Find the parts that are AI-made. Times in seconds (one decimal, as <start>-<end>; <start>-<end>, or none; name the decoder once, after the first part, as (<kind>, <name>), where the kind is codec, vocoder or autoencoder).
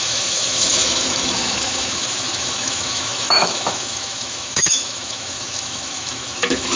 0.0-6.8 (autoencoder, DAC-VAE)